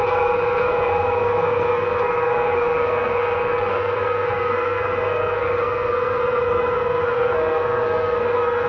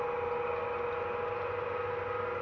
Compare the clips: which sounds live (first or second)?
second